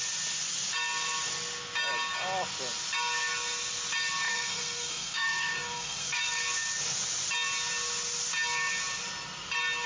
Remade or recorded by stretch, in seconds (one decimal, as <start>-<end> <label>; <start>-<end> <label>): 0.0-4.3 recorded; 4.3-6.2 remade; 6.2-9.9 recorded